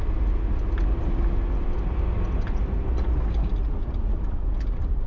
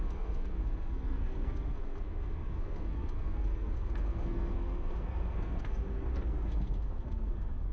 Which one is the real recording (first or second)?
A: first